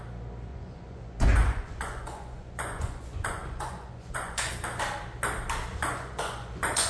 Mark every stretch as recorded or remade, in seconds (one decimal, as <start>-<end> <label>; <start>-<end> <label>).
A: 0.0-0.5 recorded; 0.5-4.5 remade; 4.5-5.8 recorded; 5.8-6.9 remade